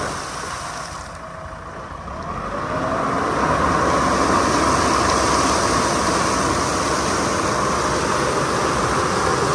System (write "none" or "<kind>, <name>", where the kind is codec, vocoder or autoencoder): none